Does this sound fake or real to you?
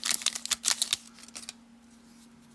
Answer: real